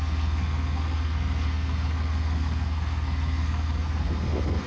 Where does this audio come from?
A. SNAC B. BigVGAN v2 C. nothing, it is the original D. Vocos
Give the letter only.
A